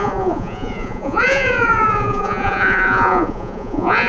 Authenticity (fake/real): fake